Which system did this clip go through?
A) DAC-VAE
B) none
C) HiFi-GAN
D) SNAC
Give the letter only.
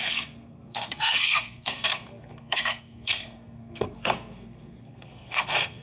D